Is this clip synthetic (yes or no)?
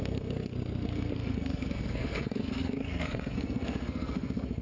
yes